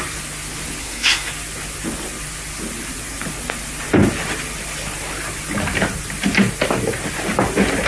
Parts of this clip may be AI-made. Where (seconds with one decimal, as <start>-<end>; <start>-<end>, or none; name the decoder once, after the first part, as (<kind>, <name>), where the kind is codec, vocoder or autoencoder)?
0.8-1.3 (codec, SNAC)